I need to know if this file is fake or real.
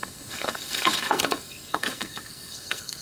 fake